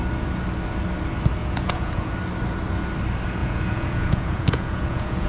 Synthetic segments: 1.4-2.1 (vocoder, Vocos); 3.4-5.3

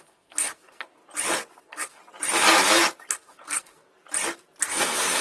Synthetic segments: 0.0-1.0 (codec, SNAC); 1.6-2.0; 3.1-3.9; 4.6-5.2

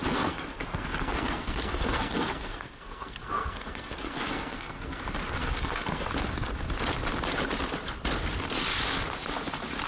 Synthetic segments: 0.0-5.0 (codec, SNAC); 5.4-6.1

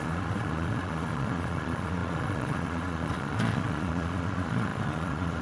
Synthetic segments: 0.0-5.4 (vocoder, Vocos)